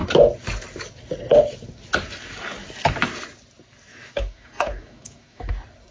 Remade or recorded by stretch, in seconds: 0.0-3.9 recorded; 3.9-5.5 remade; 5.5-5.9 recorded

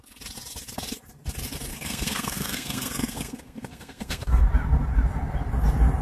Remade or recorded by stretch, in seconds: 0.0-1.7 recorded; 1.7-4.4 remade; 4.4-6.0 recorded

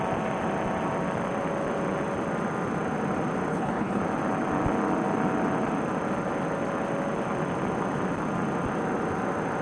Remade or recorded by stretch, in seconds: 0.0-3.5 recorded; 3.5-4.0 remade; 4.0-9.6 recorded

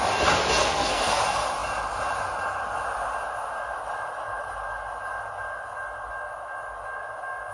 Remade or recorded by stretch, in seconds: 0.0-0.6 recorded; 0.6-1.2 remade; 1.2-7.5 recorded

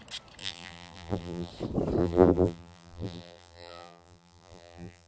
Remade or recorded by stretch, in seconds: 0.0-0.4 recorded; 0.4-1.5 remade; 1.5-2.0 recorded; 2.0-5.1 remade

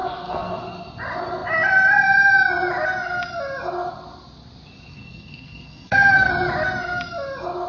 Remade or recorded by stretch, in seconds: 0.0-0.6 remade; 0.6-4.9 recorded; 4.9-6.3 remade; 6.3-7.7 recorded

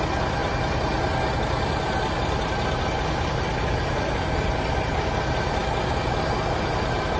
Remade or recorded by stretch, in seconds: 0.0-7.2 recorded

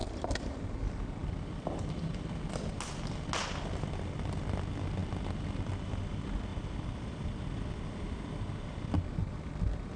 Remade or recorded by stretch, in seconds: 0.0-0.6 remade; 0.6-1.2 recorded; 1.2-1.8 remade; 1.8-6.5 recorded; 6.5-8.4 remade; 8.4-10.0 recorded